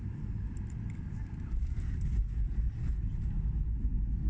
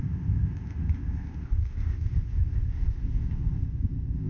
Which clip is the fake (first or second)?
second